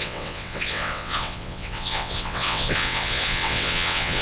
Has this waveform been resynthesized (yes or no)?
yes